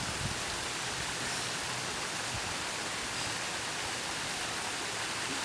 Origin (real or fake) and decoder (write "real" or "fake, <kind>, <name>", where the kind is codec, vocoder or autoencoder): real